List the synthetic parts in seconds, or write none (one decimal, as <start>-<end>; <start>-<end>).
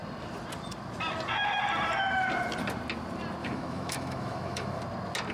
3.4-4.8